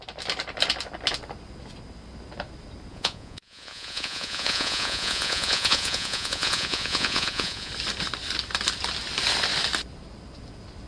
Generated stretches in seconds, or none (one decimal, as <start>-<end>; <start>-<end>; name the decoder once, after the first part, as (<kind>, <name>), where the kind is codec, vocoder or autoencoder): 2.9-7.7 (vocoder, Vocos)

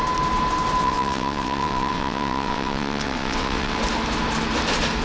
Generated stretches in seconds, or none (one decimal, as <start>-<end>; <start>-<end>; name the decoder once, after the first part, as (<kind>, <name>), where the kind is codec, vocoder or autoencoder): 0.8-3.8 (vocoder, WaveNeXt)

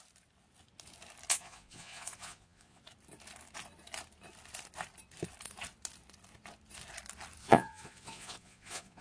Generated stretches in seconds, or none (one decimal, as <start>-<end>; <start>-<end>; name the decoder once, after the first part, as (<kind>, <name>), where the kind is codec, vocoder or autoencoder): 1.3-2.8 (vocoder, Vocos); 7.4-9.0

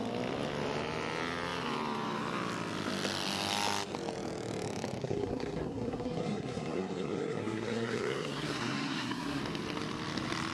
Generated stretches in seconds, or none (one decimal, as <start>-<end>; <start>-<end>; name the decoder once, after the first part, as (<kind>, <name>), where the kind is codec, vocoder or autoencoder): 5.0-9.4 (codec, SNAC)

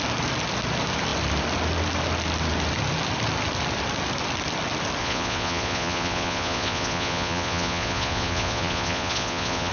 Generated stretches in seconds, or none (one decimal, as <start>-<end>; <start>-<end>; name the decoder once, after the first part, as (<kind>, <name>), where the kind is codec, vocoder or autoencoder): 5.0-9.7 (vocoder, Vocos)

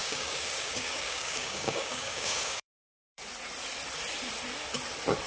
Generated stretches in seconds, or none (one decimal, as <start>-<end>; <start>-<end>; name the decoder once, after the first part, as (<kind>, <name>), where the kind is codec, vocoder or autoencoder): 0.0-3.2 (codec, DAC)

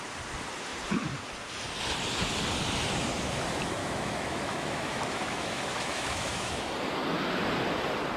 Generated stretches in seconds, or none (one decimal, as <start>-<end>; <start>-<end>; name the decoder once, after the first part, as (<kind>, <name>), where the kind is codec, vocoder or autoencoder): 3.8-6.7 (autoencoder, DAC-VAE)

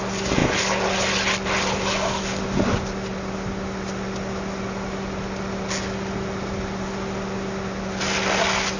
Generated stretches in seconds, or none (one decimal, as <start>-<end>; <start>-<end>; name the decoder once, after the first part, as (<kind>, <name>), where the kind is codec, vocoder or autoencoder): none